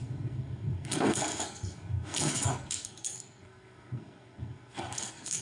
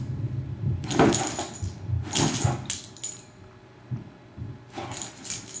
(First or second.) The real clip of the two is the second